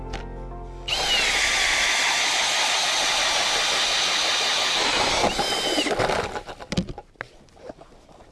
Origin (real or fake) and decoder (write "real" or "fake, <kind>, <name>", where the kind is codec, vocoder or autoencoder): real